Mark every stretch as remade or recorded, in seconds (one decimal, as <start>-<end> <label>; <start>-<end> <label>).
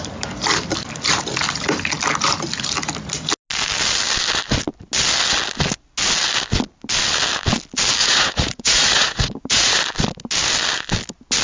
0.0-8.0 recorded; 8.0-9.8 remade; 9.8-11.4 recorded